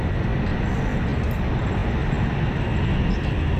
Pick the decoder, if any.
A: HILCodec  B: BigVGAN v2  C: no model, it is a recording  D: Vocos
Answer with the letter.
C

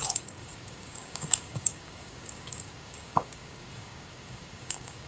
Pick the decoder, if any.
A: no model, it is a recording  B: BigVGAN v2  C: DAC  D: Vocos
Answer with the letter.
C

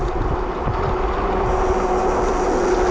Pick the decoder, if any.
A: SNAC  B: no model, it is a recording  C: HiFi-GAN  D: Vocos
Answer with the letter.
B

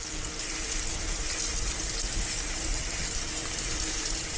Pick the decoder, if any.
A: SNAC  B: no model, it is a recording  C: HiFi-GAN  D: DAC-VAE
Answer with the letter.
B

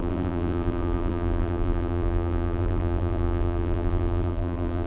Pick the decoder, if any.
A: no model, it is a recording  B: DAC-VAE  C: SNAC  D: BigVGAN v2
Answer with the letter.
D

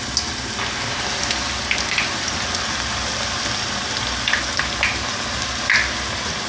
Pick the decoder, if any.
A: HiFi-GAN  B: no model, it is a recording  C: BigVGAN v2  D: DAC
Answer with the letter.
B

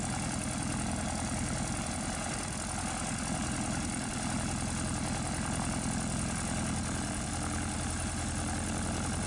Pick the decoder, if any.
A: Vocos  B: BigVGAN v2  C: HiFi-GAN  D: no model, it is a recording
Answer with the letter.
D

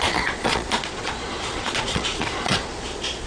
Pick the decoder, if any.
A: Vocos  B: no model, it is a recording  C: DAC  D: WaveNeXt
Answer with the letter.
A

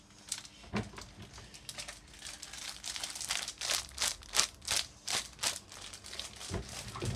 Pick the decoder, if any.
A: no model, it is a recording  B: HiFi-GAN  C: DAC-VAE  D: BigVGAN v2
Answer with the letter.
A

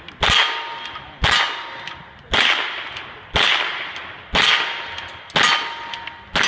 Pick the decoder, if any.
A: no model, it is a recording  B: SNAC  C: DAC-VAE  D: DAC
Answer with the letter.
A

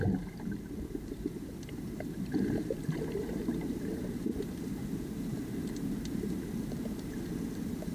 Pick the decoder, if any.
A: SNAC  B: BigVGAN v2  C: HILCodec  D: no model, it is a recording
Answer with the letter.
B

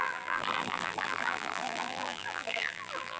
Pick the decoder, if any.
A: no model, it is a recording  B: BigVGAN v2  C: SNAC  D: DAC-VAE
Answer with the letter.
B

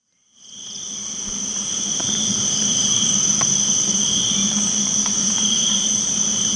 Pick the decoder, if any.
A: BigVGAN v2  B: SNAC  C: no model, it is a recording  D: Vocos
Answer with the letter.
A